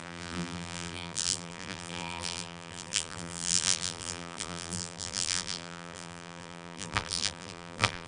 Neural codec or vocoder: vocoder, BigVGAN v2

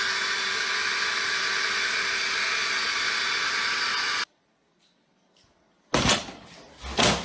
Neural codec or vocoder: none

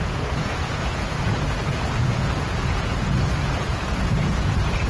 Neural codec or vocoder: vocoder, Vocos